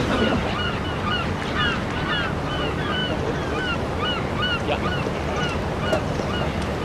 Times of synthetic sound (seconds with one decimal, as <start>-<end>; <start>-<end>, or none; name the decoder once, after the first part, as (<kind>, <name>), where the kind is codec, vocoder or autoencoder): none

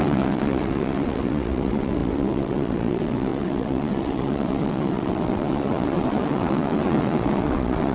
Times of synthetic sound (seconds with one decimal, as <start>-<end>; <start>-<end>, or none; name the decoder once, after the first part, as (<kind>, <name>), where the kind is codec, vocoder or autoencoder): 0.0-7.9 (vocoder, WaveNeXt)

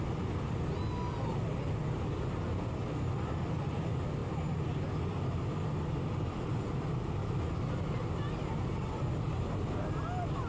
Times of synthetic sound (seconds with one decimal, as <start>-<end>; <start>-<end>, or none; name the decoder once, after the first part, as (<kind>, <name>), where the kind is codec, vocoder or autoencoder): 7.2-7.8 (vocoder, BigVGAN v2)

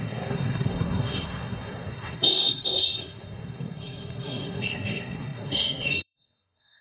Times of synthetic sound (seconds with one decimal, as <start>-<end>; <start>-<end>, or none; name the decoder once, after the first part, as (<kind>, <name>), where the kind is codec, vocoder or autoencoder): 0.0-6.8 (codec, SNAC)

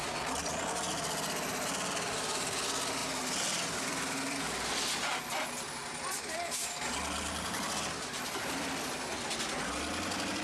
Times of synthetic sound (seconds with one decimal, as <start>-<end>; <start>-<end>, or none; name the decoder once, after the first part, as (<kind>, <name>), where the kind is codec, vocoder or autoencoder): 3.0-5.2 (vocoder, BigVGAN v2); 5.8-7.7

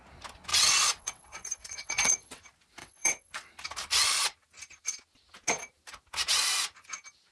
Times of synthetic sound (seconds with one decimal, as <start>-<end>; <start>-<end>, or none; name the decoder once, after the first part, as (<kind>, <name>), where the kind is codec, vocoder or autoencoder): 0.5-2.4 (vocoder, WaveNeXt); 2.8-3.5

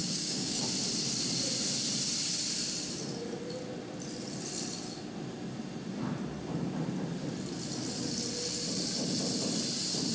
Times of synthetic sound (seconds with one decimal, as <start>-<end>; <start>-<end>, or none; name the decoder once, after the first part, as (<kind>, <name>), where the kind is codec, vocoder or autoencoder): 0.0-0.6 (codec, DAC)

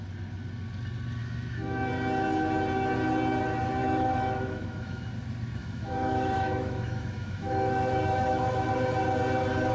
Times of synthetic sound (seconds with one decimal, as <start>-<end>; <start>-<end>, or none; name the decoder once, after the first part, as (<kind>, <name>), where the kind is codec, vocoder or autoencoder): 1.2-1.9 (autoencoder, DAC-VAE); 3.8-5.1; 5.6-8.7